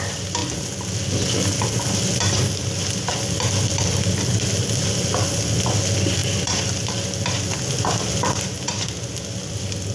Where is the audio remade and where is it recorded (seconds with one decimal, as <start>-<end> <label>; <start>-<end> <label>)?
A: 0.0-9.9 recorded